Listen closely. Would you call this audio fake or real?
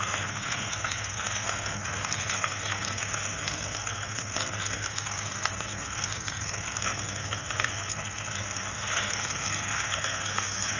fake